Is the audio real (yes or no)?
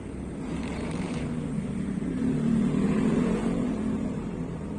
no